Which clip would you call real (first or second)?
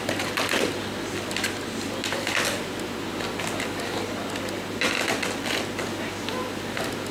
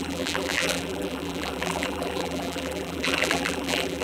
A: first